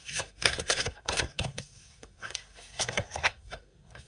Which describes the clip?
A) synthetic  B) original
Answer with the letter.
A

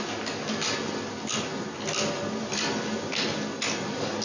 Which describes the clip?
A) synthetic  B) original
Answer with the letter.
B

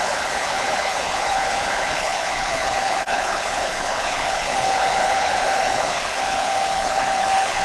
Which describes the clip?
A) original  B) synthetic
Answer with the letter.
B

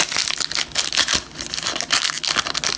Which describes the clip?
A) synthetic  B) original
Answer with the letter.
B